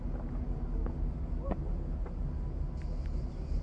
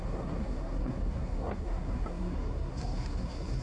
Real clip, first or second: first